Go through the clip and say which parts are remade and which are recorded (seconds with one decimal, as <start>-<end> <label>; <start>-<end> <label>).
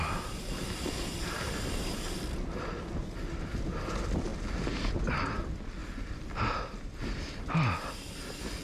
0.0-4.3 recorded; 4.3-5.0 remade; 5.0-5.8 recorded; 5.8-7.0 remade; 7.0-8.6 recorded